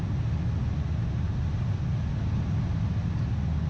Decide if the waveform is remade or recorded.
recorded